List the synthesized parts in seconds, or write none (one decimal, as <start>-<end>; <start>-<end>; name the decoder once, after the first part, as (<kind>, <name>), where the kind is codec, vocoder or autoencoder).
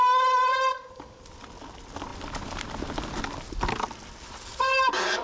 0.7-1.2 (codec, DAC)